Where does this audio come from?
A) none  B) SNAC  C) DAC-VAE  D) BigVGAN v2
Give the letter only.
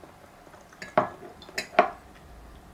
A